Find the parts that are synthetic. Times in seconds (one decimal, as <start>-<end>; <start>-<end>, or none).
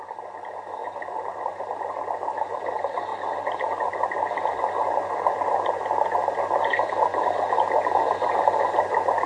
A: none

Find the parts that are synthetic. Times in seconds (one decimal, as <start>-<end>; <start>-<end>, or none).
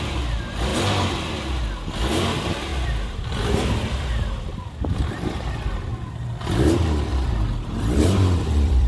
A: 2.7-5.1; 7.1-8.9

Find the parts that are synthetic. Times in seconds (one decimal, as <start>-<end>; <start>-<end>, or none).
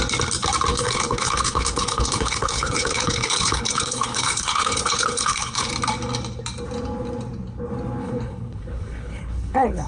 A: 0.7-5.7; 8.0-9.9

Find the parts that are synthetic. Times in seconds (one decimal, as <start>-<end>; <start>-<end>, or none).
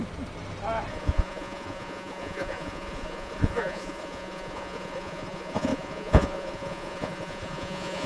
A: 0.9-8.1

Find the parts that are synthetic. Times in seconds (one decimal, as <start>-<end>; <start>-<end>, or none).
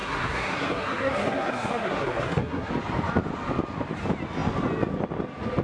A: 0.0-2.7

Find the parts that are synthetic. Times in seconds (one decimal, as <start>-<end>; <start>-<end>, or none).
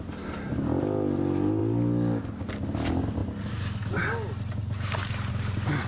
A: none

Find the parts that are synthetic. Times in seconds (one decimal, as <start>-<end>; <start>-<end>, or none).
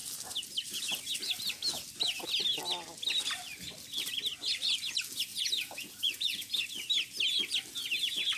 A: 5.3-6.6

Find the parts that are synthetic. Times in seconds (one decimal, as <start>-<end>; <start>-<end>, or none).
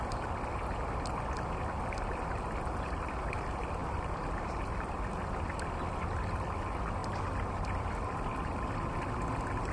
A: 7.0-9.0